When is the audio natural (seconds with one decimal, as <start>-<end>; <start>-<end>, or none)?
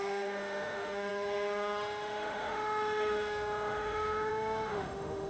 none